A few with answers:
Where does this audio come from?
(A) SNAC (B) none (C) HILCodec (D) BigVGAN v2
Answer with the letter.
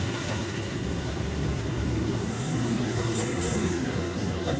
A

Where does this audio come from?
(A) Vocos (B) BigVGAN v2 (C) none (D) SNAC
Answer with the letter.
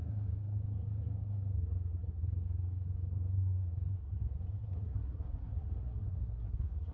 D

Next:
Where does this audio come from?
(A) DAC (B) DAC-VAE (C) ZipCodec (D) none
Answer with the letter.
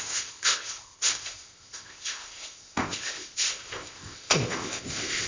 C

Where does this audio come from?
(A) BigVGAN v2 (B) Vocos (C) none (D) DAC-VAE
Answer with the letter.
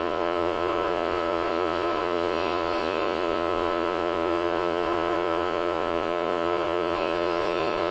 B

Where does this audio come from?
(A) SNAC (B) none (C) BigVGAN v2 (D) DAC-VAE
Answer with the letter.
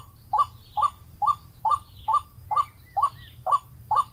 C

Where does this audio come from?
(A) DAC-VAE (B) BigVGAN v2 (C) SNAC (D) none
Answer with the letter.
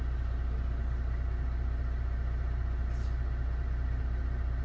D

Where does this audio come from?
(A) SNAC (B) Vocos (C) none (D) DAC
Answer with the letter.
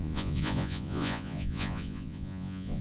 B